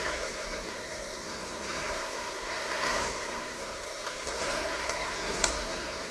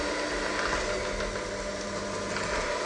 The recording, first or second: second